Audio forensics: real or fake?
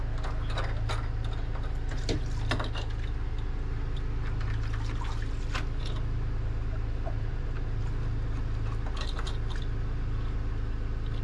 real